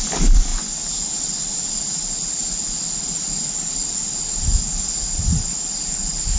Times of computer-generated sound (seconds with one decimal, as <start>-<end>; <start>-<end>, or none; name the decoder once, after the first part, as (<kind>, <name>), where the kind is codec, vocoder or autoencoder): none